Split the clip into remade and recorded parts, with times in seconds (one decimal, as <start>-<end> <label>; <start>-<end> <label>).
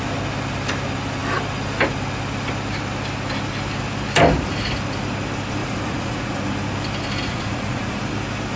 0.0-5.6 recorded; 5.6-6.4 remade; 6.4-7.3 recorded; 7.3-8.0 remade; 8.0-8.6 recorded